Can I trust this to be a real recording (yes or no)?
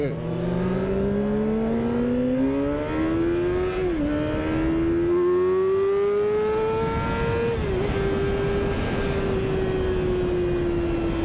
yes